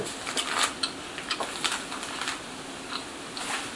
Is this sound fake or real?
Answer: real